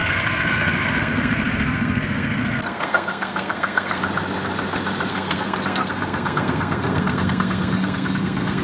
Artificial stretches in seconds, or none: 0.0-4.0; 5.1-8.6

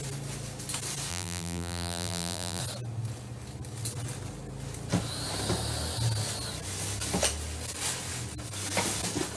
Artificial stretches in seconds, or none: 1.1-2.6

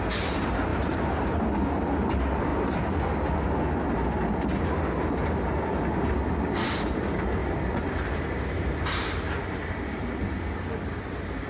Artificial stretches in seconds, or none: 0.7-1.3; 7.4-9.8

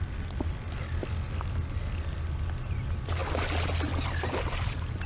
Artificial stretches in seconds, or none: none

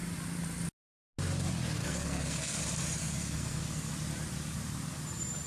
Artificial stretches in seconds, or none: 1.8-2.6; 3.0-3.9